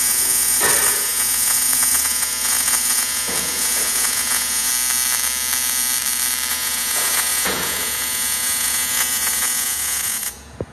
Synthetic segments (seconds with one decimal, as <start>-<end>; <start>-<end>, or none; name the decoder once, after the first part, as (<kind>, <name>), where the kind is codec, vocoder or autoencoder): 0.0-4.7 (vocoder, Vocos); 6.5-10.7